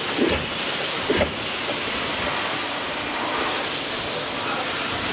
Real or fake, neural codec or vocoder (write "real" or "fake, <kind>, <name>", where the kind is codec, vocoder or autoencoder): real